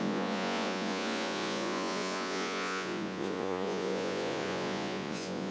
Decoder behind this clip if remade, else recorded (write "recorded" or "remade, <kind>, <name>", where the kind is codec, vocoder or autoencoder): remade, vocoder, Vocos